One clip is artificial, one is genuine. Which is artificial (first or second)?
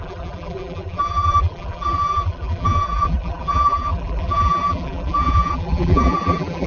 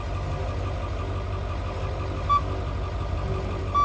first